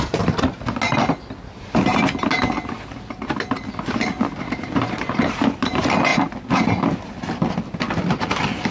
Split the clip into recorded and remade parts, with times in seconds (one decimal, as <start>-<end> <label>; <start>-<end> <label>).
0.0-8.7 recorded